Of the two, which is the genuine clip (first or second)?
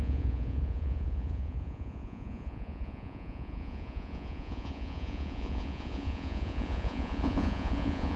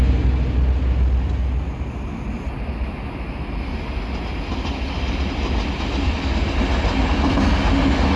second